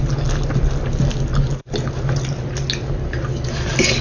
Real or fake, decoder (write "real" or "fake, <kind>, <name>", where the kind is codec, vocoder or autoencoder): real